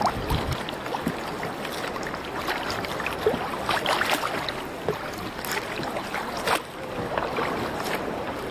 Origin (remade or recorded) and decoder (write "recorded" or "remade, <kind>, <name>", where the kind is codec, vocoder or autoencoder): recorded